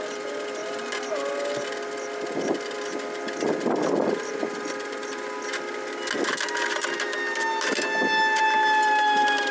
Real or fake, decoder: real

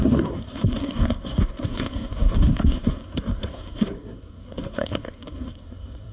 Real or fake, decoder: fake, codec, SNAC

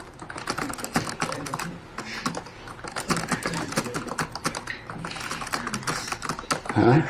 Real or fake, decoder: real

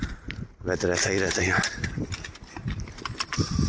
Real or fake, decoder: real